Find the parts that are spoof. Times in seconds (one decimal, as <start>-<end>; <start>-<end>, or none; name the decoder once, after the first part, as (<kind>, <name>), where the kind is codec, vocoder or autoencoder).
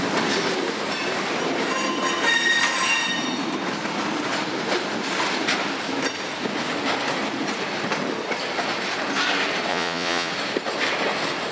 9.7-10.3 (vocoder, Vocos)